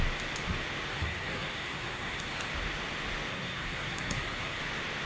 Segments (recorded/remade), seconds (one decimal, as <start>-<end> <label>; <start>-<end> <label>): 0.0-0.9 recorded; 0.9-2.5 remade; 2.5-3.3 recorded; 3.3-4.6 remade; 4.6-5.1 recorded